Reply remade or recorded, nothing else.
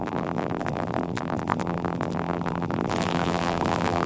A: remade